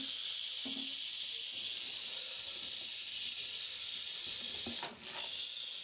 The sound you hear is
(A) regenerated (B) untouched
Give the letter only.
B